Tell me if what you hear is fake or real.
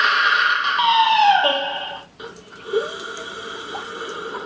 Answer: real